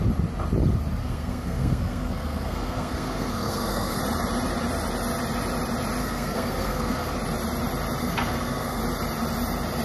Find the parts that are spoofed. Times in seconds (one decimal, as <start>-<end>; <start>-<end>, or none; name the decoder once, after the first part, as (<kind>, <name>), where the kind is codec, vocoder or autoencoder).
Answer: 1.0-4.0 (codec, SNAC); 6.0-7.1; 8.0-8.8